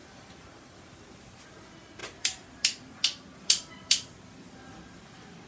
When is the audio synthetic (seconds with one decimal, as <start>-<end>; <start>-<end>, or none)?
0.0-0.8

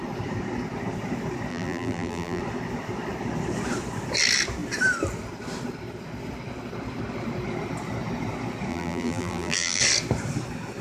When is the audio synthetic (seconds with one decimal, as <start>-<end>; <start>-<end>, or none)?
1.5-2.4; 8.7-9.8

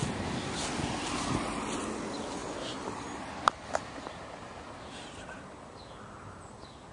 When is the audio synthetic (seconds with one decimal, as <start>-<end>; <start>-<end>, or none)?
0.0-1.4

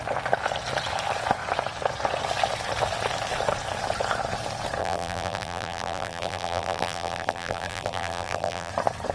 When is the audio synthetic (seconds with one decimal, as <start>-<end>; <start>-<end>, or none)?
4.8-8.7

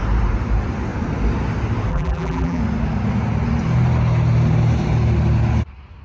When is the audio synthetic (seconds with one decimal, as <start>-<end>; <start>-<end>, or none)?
1.9-2.6

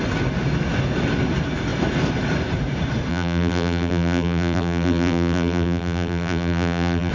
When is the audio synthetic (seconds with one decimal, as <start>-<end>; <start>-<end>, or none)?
3.1-7.1

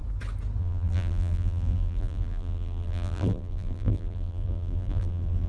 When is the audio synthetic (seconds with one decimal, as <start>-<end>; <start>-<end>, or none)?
0.6-5.5

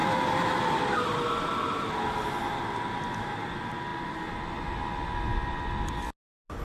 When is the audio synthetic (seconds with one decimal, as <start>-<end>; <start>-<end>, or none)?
none